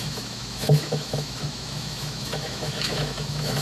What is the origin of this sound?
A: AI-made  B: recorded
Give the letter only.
A